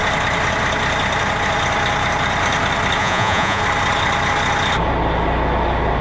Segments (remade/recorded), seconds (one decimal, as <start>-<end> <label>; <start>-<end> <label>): 0.0-3.0 recorded; 3.0-3.6 remade; 3.6-6.0 recorded